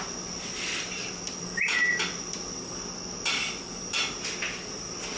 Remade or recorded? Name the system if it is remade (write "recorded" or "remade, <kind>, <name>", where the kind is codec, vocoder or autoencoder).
recorded